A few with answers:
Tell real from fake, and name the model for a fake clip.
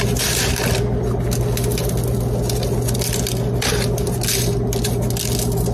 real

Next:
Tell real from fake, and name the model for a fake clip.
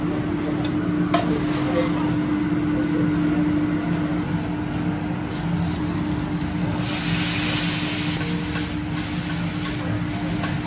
real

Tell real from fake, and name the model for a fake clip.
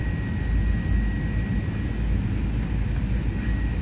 real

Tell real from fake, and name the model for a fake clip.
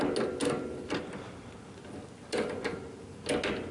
real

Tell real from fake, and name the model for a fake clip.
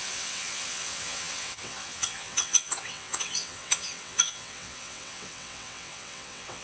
fake, vocoder, WaveNeXt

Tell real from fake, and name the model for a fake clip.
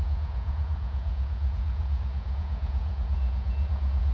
fake, vocoder, Vocos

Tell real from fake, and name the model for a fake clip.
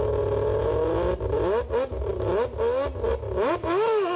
real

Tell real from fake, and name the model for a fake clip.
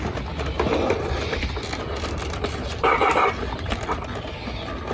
real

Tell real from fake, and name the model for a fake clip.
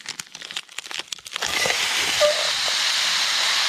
real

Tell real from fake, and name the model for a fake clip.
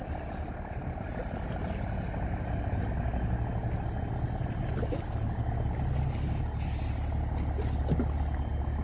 real